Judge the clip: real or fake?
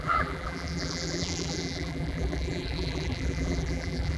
fake